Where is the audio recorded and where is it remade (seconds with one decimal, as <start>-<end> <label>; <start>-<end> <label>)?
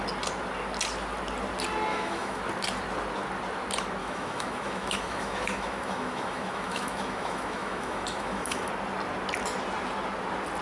0.0-1.9 recorded; 1.9-2.4 remade; 2.4-4.0 recorded; 4.0-8.7 remade; 8.7-10.6 recorded